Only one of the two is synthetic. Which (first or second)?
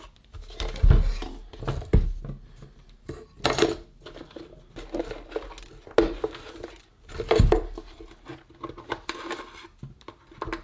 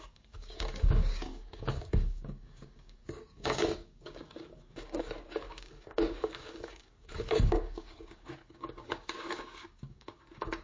second